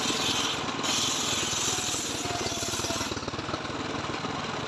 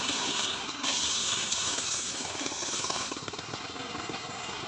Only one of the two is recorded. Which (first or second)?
first